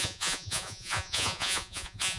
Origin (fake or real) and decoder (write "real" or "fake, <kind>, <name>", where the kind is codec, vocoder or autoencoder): fake, vocoder, Vocos